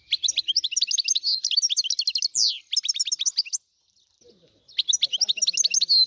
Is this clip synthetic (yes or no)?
no